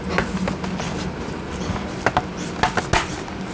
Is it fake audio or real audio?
real